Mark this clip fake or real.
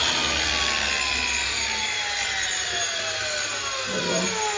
real